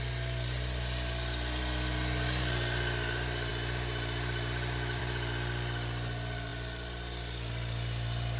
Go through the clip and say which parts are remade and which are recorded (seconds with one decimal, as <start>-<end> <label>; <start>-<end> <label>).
0.0-8.4 recorded